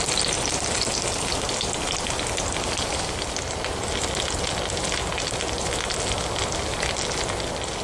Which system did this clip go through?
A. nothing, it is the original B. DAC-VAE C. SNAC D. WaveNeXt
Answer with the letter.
A